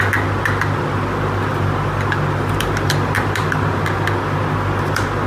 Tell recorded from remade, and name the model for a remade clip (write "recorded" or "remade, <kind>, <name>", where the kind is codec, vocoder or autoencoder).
recorded